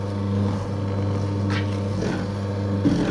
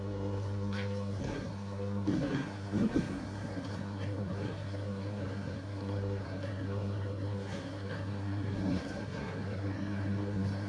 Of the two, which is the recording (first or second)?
first